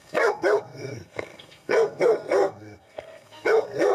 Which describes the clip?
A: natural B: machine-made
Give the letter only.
B